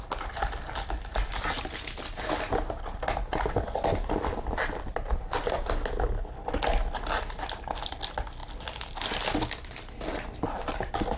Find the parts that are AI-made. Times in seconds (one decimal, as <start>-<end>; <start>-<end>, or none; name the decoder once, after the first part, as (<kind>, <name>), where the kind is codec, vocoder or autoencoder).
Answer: none